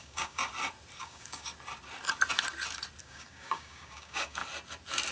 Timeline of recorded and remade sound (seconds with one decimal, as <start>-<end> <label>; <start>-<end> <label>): 0.0-0.4 remade; 0.4-1.0 recorded; 1.0-1.5 remade; 1.5-3.0 recorded; 3.0-4.4 remade; 4.4-5.1 recorded